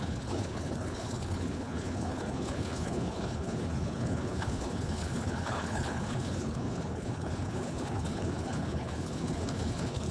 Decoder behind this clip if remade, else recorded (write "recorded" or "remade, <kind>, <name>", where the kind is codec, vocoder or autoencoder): remade, codec, HILCodec